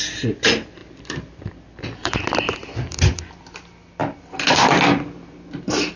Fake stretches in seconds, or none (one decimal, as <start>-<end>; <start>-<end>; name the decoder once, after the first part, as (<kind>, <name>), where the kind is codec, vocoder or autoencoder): 0.8-2.2 (vocoder, BigVGAN v2); 2.6-3.2